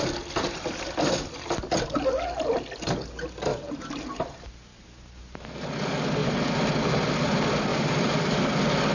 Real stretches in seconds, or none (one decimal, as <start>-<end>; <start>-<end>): 0.0-3.5; 4.3-4.7; 5.6-7.7; 8.4-8.9